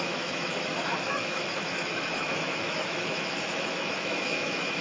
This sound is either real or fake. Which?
fake